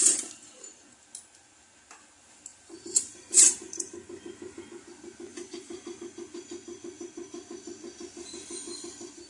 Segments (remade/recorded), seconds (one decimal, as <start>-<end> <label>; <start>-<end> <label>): 0.0-0.6 remade; 0.6-2.5 recorded; 2.5-4.6 remade; 4.6-5.3 recorded; 5.3-6.0 remade; 6.0-9.3 recorded